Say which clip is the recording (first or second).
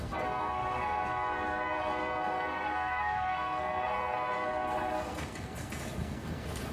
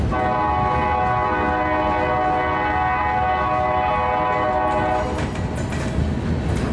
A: second